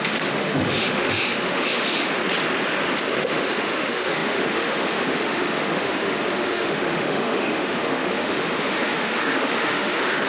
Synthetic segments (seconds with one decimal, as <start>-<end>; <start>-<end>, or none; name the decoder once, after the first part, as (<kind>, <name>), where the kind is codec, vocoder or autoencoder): 0.0-2.2 (autoencoder, DAC-VAE); 3.0-10.3